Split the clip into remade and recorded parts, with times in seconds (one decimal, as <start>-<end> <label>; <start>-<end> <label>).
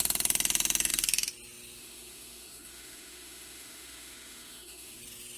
0.0-1.8 recorded; 1.8-5.0 remade; 5.0-5.4 recorded